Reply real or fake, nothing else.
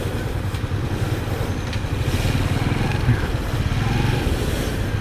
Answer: real